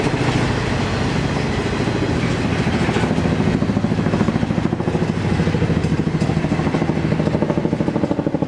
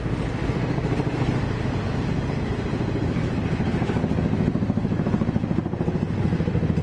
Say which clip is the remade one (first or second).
second